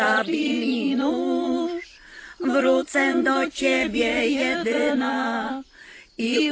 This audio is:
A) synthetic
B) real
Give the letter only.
A